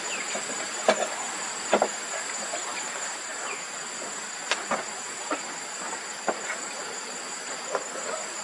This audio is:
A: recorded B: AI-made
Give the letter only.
A